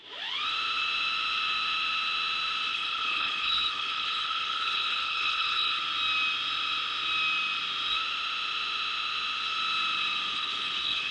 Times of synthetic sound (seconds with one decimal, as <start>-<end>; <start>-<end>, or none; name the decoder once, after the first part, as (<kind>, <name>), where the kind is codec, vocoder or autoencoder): 2.7-5.8 (codec, HILCodec); 10.3-11.1